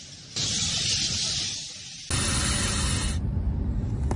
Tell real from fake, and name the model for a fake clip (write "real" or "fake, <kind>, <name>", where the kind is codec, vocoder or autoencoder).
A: real